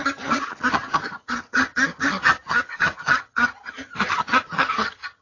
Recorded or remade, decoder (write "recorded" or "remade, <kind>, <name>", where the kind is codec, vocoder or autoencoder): remade, vocoder, HiFi-GAN